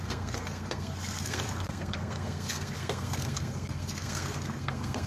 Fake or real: fake